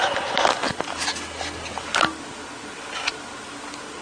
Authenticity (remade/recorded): recorded